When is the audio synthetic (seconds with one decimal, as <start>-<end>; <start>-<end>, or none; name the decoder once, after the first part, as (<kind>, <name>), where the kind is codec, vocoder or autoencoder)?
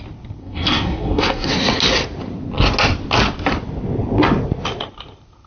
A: 0.4-1.5 (codec, SNAC)